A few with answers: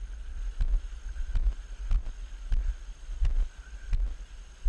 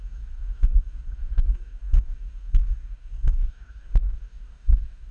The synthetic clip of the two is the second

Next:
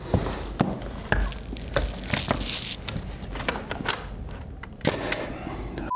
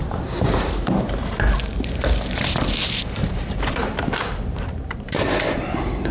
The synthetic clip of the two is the second